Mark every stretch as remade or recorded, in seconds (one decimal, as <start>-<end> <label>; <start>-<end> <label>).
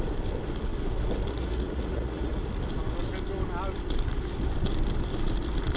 0.0-1.4 recorded; 1.4-2.5 remade; 2.5-5.8 recorded